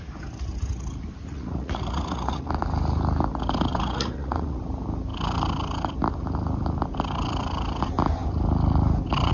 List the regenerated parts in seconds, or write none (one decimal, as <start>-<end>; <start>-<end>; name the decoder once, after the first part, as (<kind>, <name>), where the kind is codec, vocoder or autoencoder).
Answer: 1.3-2.5 (vocoder, Vocos); 3.7-4.6